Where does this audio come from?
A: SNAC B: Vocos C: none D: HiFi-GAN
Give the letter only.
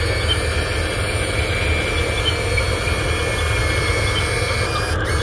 C